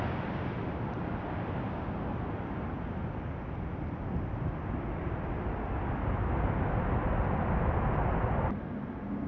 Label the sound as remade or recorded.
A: recorded